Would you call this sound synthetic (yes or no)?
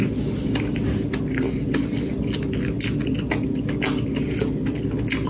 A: no